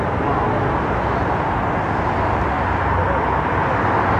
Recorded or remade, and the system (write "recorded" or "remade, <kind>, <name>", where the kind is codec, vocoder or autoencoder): recorded